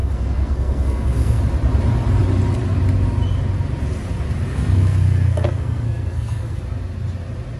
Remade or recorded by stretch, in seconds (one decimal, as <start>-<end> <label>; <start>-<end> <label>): 0.0-1.4 remade; 1.4-4.5 recorded; 4.5-6.6 remade; 6.6-7.6 recorded